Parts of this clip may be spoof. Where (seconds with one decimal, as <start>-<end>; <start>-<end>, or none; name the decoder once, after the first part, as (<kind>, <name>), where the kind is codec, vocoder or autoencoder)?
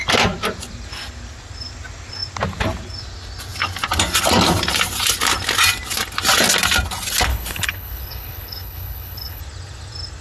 7.3-9.4 (codec, HILCodec)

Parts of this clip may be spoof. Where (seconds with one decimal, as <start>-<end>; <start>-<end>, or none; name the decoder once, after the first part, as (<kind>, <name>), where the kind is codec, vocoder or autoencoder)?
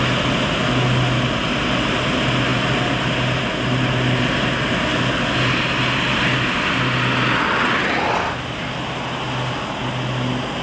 none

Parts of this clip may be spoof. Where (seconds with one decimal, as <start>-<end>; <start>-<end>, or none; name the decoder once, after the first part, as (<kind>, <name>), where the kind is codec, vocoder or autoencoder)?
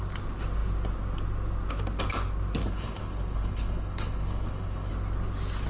2.6-4.9 (codec, HILCodec)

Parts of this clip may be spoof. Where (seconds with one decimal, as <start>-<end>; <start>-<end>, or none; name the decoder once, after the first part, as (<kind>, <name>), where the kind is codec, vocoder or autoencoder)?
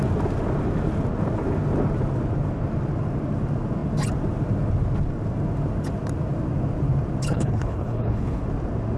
7.3-8.4 (codec, HILCodec)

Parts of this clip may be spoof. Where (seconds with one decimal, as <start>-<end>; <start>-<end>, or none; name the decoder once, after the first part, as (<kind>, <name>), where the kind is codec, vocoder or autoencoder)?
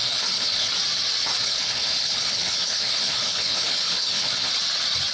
0.0-0.7 (codec, HILCodec); 1.4-4.5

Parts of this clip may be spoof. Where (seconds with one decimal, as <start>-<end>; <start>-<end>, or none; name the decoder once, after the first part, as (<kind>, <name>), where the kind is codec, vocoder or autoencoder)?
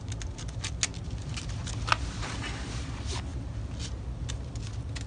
none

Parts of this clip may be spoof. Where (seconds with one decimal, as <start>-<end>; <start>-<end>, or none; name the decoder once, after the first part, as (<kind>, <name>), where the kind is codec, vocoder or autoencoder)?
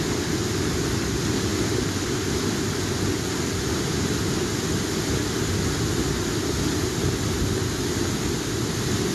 none